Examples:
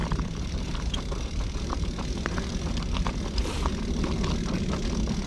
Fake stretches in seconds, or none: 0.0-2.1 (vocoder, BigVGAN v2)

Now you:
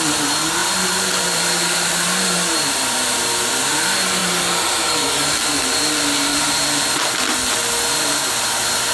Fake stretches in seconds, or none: 0.6-3.5 (vocoder, BigVGAN v2); 4.2-5.1

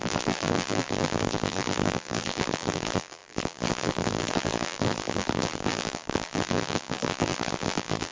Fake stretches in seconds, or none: 0.0-8.1 (vocoder, BigVGAN v2)

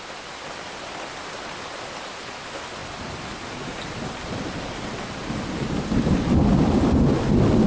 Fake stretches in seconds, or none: 2.8-6.8 (vocoder, BigVGAN v2)

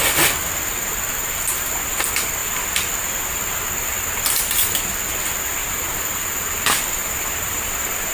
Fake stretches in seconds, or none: 5.6-6.4 (vocoder, BigVGAN v2); 7.0-8.1

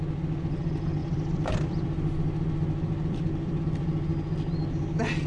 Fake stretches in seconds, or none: 1.0-3.6 (vocoder, BigVGAN v2)